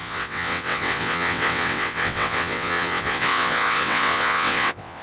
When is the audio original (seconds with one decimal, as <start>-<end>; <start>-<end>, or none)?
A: none